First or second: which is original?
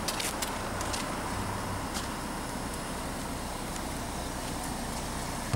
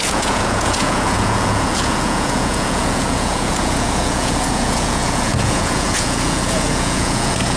first